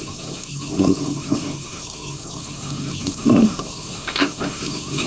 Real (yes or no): no